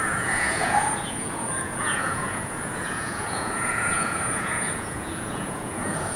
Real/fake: fake